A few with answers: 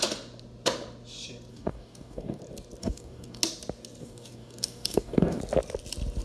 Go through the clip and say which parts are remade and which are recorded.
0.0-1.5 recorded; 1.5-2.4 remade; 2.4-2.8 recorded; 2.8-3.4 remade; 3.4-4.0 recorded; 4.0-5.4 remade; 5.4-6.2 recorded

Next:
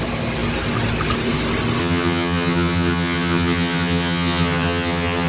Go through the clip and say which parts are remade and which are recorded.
0.0-1.8 recorded; 1.8-5.3 remade

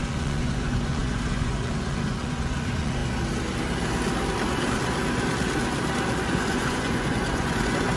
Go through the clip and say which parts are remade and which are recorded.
0.0-3.0 remade; 3.0-6.2 recorded; 6.2-8.0 remade

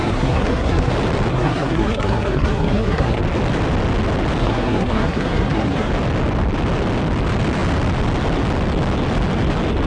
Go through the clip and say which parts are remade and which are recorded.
0.0-0.9 remade; 0.9-1.3 recorded; 1.3-3.2 remade; 3.2-4.4 recorded; 4.4-5.9 remade; 5.9-9.9 recorded

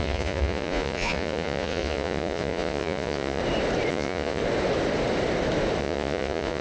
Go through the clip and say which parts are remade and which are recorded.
0.0-3.4 remade; 3.4-3.9 recorded; 3.9-4.4 remade; 4.4-5.8 recorded; 5.8-6.6 remade